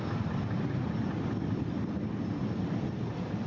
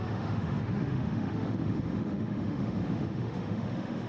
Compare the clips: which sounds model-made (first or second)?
second